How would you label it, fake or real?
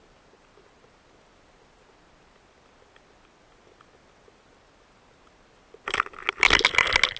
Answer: real